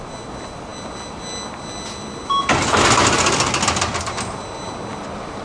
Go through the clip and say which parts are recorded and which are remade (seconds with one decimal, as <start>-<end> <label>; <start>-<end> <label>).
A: 0.0-5.4 recorded